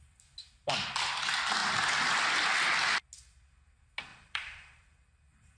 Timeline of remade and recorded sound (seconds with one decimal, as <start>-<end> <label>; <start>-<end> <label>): 0.0-4.1 recorded; 4.1-4.8 remade; 4.8-5.6 recorded